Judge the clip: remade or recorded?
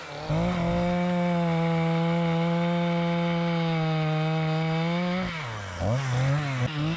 recorded